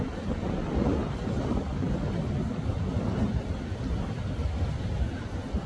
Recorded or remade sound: recorded